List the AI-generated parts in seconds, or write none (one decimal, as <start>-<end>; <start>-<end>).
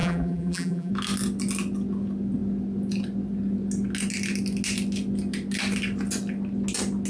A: 0.0-0.9